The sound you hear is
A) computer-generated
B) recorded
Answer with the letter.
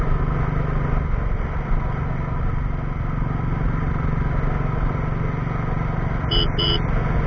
B